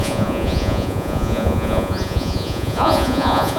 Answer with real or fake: fake